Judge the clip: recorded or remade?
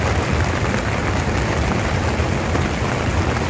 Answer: recorded